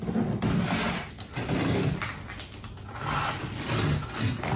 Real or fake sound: real